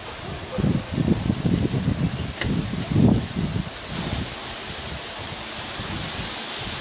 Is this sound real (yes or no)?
yes